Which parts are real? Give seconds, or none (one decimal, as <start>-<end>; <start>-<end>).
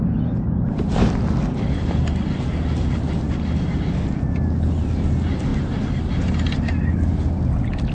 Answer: 0.0-7.9